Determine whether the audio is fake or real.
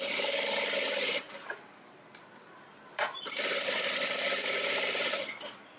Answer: fake